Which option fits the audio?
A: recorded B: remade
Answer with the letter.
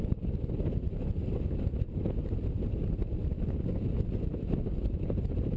B